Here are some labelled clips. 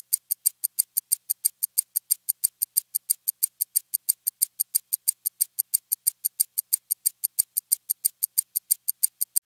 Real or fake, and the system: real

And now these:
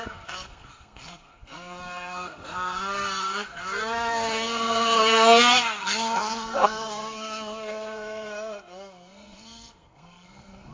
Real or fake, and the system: fake, codec, SNAC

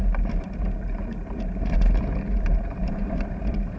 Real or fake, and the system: fake, vocoder, BigVGAN v2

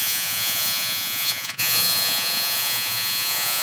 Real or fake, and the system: fake, vocoder, Vocos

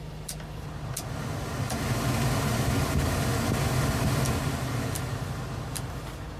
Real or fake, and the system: real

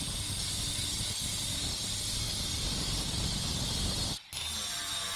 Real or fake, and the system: real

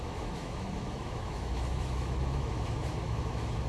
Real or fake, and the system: fake, autoencoder, DAC-VAE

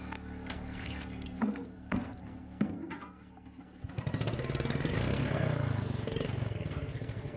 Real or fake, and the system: fake, codec, SNAC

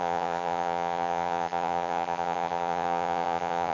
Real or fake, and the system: fake, vocoder, HiFi-GAN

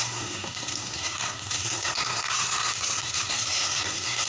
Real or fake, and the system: fake, codec, SNAC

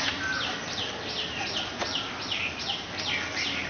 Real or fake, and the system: real